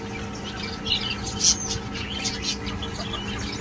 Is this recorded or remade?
recorded